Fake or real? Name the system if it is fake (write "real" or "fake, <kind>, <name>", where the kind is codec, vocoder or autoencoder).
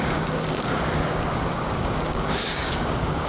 fake, codec, DAC